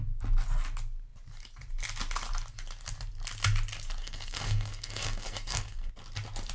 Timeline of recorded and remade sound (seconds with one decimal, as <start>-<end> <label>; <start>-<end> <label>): 0.0-4.0 recorded; 4.0-5.9 remade; 5.9-6.5 recorded